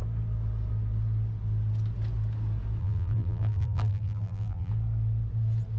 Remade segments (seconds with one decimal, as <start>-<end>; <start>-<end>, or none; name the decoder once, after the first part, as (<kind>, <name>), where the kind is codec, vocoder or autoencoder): 2.8-4.7 (vocoder, BigVGAN v2)